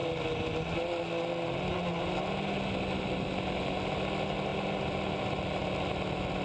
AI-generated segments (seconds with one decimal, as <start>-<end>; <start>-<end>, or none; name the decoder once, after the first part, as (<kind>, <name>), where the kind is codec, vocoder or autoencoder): none